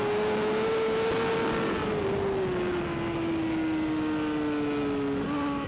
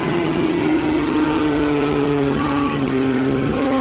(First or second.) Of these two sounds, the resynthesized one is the second